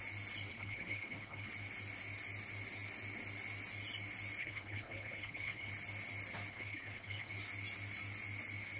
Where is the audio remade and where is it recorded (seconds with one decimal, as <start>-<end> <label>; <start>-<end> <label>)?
0.0-0.5 recorded; 0.5-1.5 remade; 1.5-4.4 recorded; 4.4-5.7 remade; 5.7-6.5 recorded; 6.5-7.3 remade; 7.3-8.8 recorded